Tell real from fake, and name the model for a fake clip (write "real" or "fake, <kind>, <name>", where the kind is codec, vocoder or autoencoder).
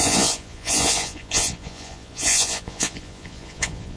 fake, vocoder, Vocos